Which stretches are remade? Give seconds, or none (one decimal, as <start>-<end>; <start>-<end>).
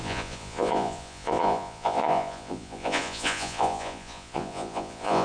0.0-5.2